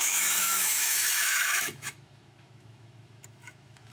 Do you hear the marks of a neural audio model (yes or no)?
yes